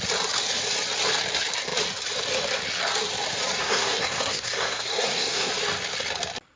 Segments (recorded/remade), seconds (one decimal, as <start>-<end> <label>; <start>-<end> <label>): 0.0-3.6 recorded; 3.6-5.5 remade; 5.5-6.6 recorded